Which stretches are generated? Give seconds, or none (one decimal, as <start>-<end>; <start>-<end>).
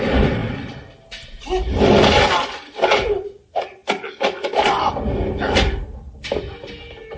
none